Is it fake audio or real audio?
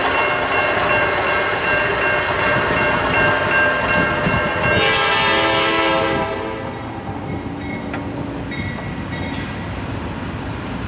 real